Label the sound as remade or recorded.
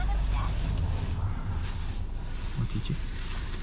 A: recorded